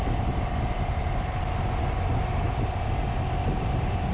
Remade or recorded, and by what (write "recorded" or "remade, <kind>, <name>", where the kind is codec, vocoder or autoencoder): recorded